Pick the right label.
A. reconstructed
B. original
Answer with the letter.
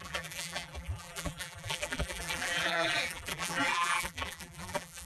A